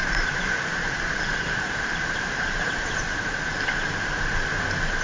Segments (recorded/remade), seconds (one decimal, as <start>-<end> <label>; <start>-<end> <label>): 0.0-3.0 remade; 3.0-5.0 recorded